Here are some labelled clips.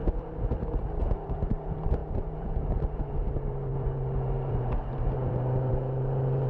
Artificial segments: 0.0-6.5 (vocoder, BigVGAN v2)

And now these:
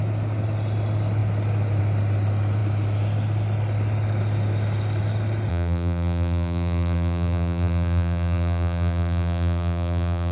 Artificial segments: 5.5-10.3 (vocoder, BigVGAN v2)